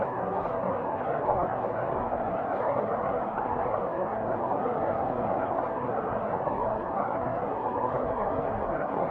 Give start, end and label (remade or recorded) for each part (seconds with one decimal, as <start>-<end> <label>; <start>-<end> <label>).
0.0-9.1 remade